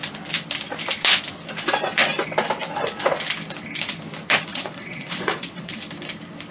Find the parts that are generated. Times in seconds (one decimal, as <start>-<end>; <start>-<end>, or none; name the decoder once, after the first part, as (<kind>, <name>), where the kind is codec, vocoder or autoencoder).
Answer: 4.5-5.8 (vocoder, Vocos)